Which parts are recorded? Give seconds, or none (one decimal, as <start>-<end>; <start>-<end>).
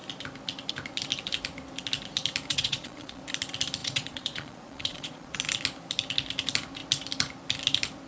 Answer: 0.0-2.5; 3.2-3.8; 5.3-8.1